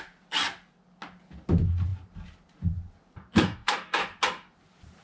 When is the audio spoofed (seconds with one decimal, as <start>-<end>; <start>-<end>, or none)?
3.4-4.0